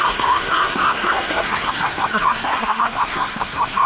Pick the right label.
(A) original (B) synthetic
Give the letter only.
B